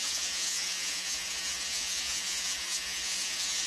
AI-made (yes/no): yes